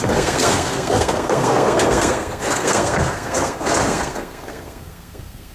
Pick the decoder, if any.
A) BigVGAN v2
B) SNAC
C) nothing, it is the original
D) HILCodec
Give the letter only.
B